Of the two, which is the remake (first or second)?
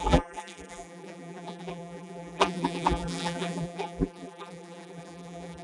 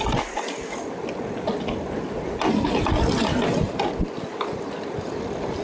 first